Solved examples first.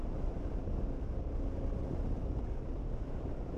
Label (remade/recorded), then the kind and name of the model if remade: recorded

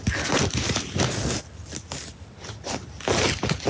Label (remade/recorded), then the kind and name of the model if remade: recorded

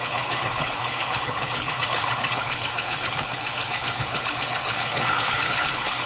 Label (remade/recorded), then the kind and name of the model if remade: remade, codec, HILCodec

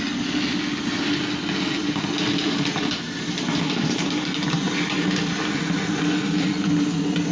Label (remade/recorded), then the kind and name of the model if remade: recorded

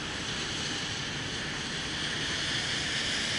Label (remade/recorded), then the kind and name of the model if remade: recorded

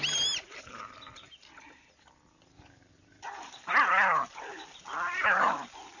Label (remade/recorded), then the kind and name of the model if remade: recorded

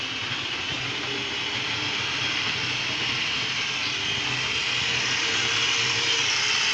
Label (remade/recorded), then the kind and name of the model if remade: recorded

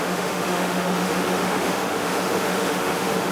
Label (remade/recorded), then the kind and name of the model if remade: remade, autoencoder, DAC-VAE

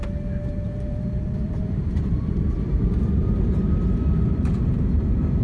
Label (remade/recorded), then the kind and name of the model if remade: remade, vocoder, BigVGAN v2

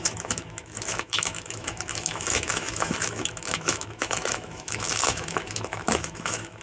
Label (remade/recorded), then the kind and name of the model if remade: remade, autoencoder, DAC-VAE